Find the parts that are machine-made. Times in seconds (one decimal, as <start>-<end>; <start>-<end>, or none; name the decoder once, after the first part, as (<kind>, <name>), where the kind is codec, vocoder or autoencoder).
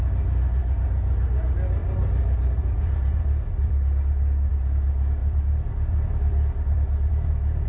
1.8-4.5 (vocoder, BigVGAN v2); 5.2-7.1